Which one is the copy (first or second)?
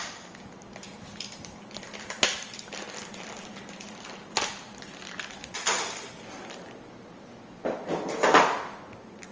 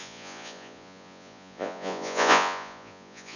second